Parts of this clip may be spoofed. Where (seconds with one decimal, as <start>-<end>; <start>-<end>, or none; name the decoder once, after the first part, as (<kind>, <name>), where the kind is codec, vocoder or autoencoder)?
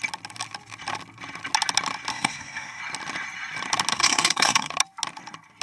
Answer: 2.1-2.8 (codec, SNAC); 3.9-4.7